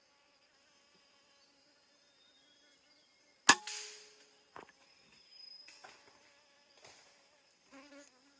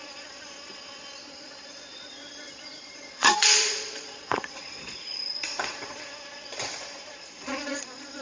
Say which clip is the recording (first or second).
first